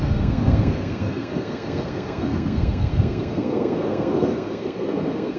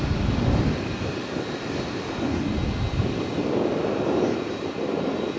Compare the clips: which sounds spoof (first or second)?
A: first